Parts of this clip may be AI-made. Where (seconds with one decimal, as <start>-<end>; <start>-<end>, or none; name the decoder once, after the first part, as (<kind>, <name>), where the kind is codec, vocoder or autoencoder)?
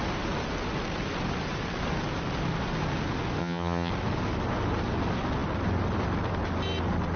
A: 3.4-3.9 (vocoder, HiFi-GAN)